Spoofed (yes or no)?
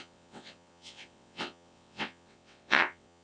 yes